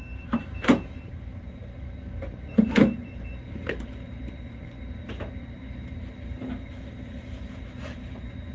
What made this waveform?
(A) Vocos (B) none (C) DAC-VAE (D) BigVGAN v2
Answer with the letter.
D